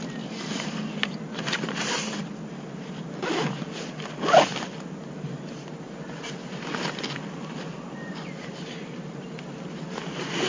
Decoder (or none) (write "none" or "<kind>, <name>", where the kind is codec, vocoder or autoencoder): none